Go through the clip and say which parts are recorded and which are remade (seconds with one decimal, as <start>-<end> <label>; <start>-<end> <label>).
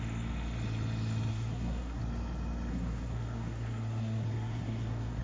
0.0-1.3 recorded; 1.3-2.0 remade; 2.0-2.7 recorded; 2.7-5.2 remade